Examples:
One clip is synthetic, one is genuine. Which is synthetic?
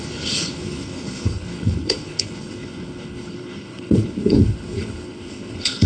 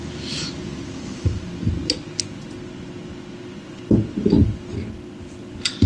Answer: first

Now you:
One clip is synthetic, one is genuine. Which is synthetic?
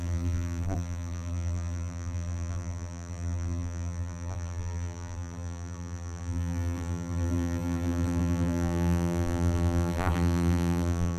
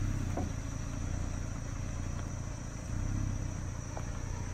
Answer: first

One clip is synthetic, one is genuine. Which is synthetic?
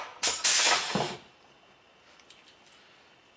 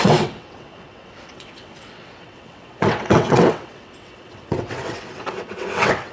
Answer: second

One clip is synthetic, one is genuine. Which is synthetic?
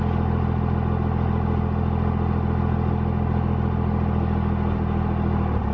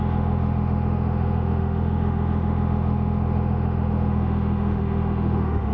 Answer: second